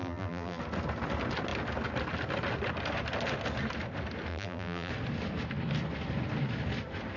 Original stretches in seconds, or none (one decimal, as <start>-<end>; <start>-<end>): 0.6-4.3; 4.9-7.2